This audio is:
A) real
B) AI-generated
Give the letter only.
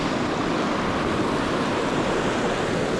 A